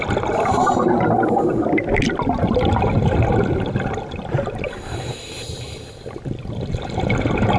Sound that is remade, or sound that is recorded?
recorded